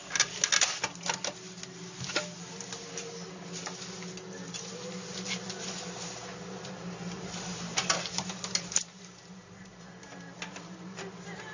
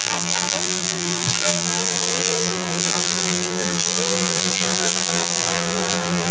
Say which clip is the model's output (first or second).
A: second